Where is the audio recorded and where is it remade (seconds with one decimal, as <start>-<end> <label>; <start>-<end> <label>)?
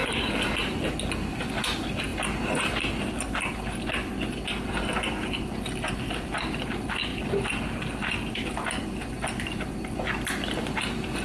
0.0-11.2 recorded